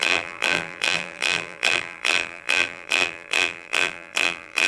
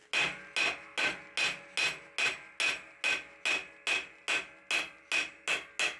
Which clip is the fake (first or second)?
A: first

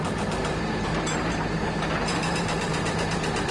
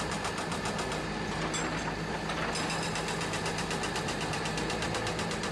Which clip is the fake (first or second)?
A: first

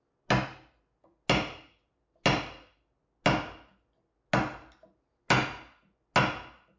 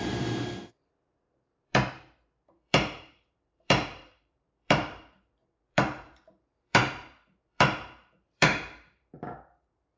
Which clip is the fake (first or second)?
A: second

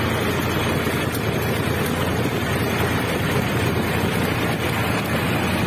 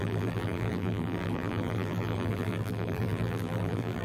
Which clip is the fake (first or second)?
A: second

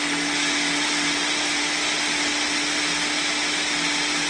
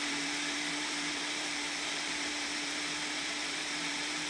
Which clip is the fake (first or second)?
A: second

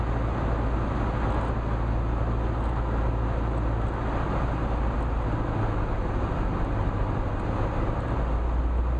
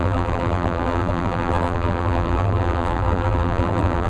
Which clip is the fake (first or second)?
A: second